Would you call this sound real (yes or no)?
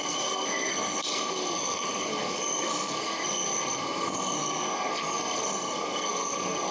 no